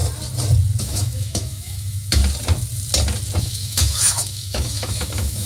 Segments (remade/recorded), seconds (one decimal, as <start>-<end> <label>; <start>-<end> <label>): 0.0-0.8 recorded; 0.8-2.2 remade; 2.2-3.4 recorded; 3.4-5.5 remade